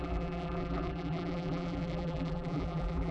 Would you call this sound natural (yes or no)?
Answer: no